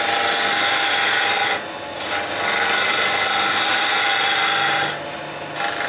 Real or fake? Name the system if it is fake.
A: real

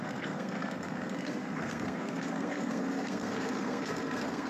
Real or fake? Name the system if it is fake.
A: fake, codec, SNAC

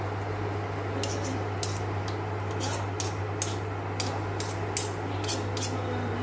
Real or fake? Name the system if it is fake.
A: real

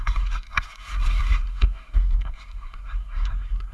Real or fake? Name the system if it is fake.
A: fake, codec, SNAC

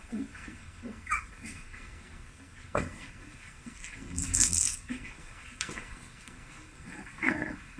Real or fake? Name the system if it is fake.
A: fake, codec, SNAC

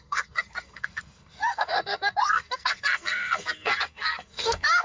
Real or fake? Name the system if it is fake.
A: fake, codec, SNAC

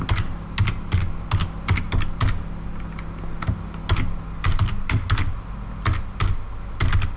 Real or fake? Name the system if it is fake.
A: real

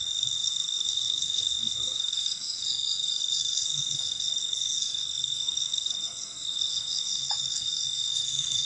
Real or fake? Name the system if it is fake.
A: fake, codec, SNAC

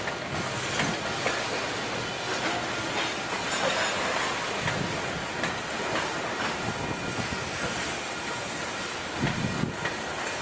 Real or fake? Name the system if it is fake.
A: real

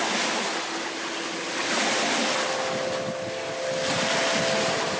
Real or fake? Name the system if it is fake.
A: real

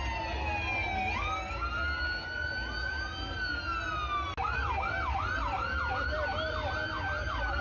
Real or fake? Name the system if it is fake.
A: real